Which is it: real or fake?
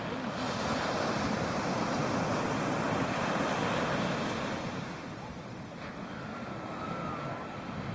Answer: real